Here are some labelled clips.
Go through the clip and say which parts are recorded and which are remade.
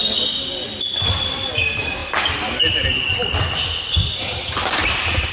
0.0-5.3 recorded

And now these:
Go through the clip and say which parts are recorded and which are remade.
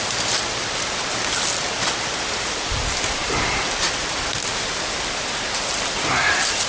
0.0-6.7 recorded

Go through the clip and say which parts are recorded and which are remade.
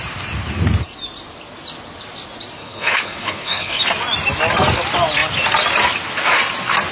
0.0-2.6 recorded; 2.6-3.8 remade; 3.8-6.9 recorded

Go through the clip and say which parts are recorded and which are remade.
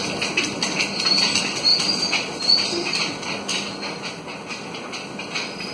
0.0-5.7 recorded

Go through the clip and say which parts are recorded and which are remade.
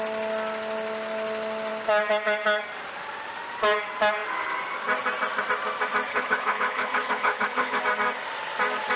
0.0-6.1 recorded; 6.1-7.8 remade; 7.8-9.0 recorded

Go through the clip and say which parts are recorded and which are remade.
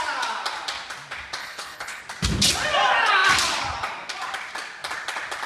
0.0-1.4 recorded; 1.4-2.0 remade; 2.0-5.5 recorded